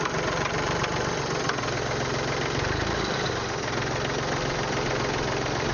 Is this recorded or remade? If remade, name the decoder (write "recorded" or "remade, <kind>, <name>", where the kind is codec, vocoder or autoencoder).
recorded